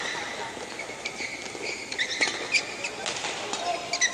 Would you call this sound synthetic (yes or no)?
no